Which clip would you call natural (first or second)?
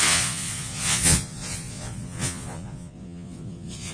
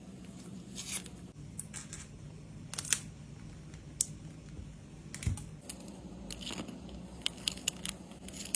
second